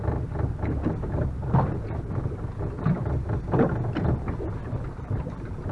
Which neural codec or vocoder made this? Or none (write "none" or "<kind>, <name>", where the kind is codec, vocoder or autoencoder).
none